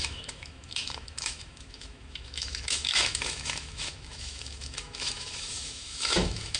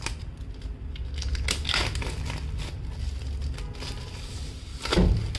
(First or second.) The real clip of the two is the second